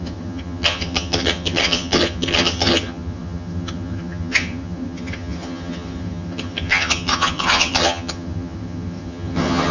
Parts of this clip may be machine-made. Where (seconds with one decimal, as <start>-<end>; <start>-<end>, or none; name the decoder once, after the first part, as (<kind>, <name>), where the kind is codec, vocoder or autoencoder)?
0.0-9.7 (vocoder, HiFi-GAN)